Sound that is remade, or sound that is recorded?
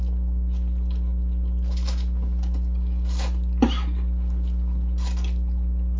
recorded